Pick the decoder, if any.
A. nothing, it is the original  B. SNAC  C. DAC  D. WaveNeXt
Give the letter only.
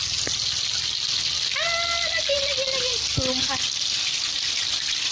A